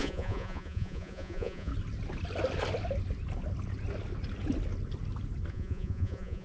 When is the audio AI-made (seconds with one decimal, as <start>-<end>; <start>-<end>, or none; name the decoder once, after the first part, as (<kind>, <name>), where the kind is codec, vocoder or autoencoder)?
0.0-1.7 (vocoder, Vocos); 5.5-6.4